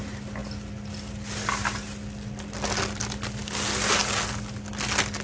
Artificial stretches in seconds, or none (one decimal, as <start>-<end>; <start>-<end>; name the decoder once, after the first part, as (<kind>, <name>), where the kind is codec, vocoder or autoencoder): none